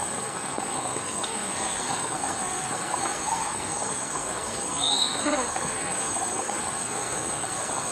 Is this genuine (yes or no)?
no